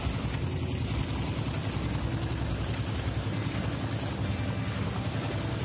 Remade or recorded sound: recorded